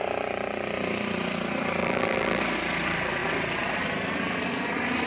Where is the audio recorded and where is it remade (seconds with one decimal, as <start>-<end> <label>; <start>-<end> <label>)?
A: 0.0-1.8 recorded; 1.8-2.4 remade; 2.4-5.1 recorded